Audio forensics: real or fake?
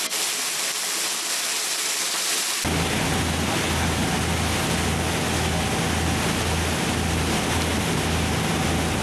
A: real